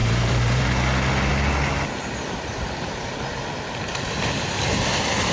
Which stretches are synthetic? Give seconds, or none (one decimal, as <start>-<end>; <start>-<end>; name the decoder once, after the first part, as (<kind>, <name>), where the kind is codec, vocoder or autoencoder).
0.0-0.6 (vocoder, BigVGAN v2)